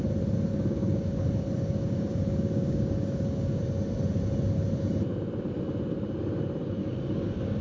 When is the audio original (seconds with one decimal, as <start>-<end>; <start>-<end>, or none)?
0.0-0.5; 3.6-6.8

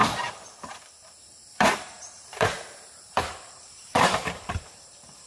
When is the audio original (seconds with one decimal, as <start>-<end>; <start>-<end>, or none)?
none

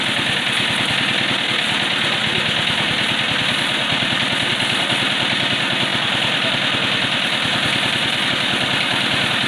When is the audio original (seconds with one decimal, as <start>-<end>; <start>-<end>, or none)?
0.0-9.5

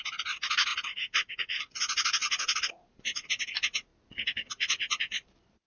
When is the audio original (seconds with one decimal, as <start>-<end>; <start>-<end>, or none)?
0.0-5.7

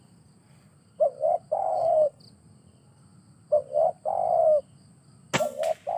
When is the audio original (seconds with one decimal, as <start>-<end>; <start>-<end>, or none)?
0.0-1.6; 2.2-6.0

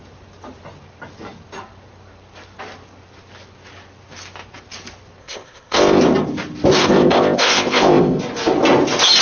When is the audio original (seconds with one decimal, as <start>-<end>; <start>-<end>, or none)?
0.0-5.2; 6.0-6.8; 8.2-9.2